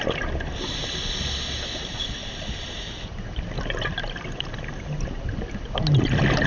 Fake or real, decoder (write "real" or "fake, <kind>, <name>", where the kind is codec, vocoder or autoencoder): real